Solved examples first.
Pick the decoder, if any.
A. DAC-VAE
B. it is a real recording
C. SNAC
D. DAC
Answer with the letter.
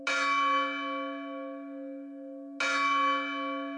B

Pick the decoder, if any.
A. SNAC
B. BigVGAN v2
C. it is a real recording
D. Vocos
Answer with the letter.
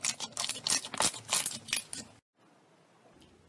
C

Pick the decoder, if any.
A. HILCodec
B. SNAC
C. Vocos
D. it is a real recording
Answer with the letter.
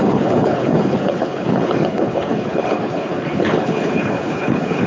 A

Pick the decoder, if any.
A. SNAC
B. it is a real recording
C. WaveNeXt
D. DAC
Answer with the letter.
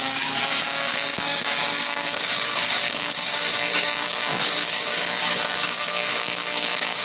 D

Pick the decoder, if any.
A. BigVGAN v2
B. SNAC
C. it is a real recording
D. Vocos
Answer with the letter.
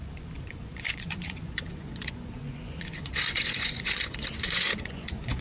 D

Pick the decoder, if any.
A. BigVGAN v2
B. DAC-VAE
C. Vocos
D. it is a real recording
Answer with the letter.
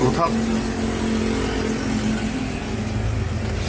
D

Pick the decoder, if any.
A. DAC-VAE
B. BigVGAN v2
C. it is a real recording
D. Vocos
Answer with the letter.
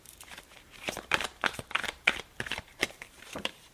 B